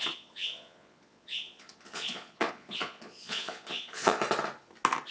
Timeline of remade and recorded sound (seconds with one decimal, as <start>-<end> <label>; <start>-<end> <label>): 0.0-4.2 remade; 4.2-5.1 recorded